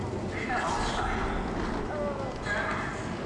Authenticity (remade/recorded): recorded